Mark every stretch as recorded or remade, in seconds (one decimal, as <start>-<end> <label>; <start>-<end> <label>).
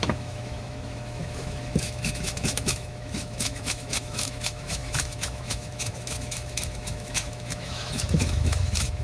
0.0-9.0 remade